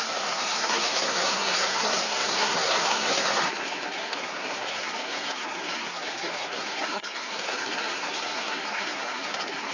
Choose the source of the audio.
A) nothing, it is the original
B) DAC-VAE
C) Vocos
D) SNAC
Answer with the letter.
D